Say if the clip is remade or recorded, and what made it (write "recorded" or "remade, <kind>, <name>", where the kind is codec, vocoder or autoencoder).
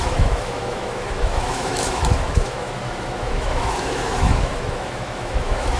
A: remade, autoencoder, DAC-VAE